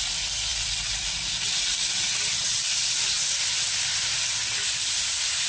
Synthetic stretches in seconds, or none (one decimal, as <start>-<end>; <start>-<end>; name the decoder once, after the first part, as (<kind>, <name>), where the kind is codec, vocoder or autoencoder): none